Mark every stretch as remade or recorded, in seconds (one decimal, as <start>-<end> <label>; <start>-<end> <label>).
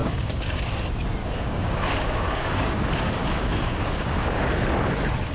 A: 0.0-0.7 remade; 0.7-1.2 recorded; 1.2-4.4 remade; 4.4-5.3 recorded